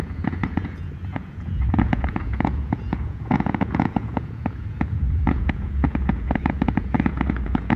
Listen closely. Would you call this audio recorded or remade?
remade